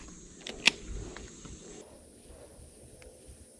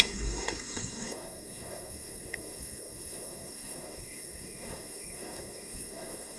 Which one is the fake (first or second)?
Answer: second